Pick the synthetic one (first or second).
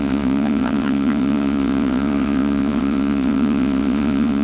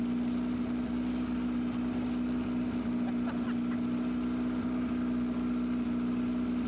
first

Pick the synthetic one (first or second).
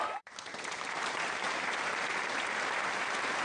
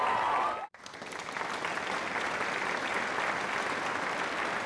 first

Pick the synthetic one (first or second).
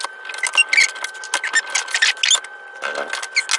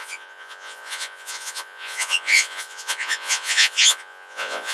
second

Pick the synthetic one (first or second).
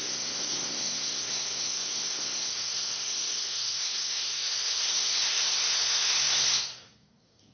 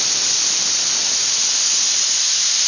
first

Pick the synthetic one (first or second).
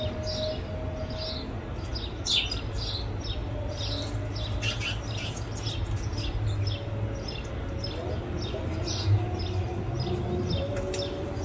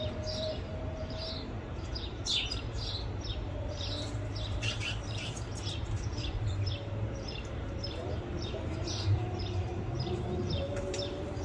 second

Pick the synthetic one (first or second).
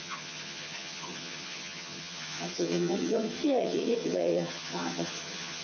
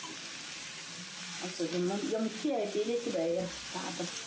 first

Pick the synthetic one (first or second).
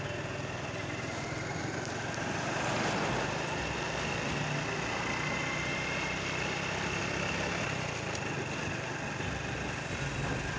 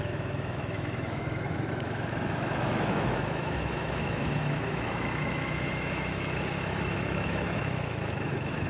second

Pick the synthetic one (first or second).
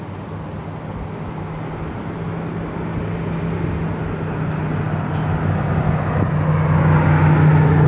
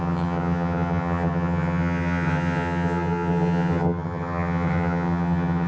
second